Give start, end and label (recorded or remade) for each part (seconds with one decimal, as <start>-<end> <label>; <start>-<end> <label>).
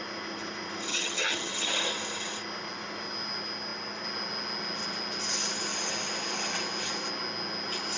0.0-0.9 recorded; 0.9-1.7 remade; 1.7-8.0 recorded